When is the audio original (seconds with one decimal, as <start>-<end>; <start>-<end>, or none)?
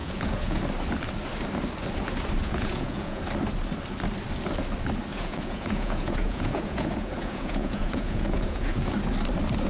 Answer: 0.6-2.4; 3.2-5.1; 8.9-9.7